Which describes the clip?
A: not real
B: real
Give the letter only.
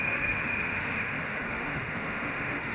A